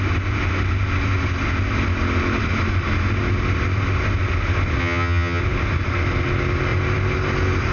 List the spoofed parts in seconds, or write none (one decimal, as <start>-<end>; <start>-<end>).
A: 4.8-5.4